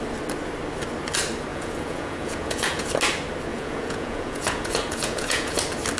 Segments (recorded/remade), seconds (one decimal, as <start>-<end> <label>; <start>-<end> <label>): 0.0-1.5 recorded; 1.5-2.9 remade; 2.9-3.5 recorded; 3.5-5.6 remade; 5.6-6.0 recorded